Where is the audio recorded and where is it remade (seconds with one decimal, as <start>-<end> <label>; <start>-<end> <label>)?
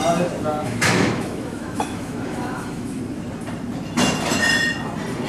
0.0-0.6 recorded; 0.6-3.0 remade; 3.0-5.3 recorded